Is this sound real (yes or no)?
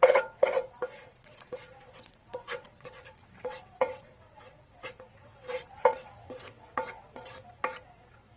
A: no